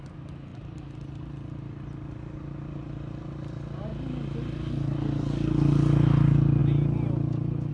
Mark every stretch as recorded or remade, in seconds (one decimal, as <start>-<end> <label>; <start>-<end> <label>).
0.0-7.7 recorded